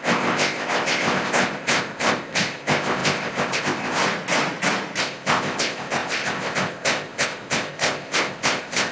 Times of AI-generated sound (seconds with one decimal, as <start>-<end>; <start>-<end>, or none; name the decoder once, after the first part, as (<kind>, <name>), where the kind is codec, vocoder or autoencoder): 0.0-4.0 (codec, ZipCodec); 5.0-8.9